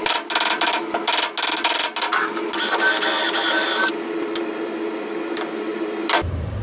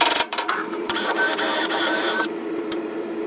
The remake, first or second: second